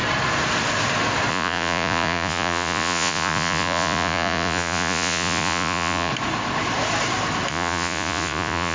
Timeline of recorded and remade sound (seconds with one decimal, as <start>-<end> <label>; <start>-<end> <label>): 0.0-1.3 recorded; 1.3-6.1 remade; 6.1-7.5 recorded; 7.5-8.7 remade